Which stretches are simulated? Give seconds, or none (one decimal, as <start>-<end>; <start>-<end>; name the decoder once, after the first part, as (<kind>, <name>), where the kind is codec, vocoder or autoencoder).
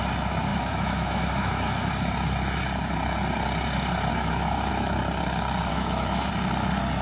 0.5-1.9 (autoencoder, DAC-VAE); 4.1-4.7; 5.7-6.3